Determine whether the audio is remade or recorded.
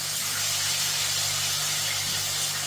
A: recorded